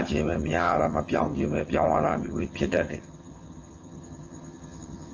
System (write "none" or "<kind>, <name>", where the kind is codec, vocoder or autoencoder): vocoder, HiFi-GAN